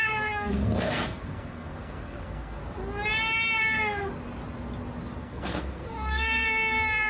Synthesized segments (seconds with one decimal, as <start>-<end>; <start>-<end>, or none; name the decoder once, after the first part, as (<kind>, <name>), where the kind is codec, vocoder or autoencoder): 0.0-2.6 (codec, SNAC); 3.6-4.1; 5.2-7.1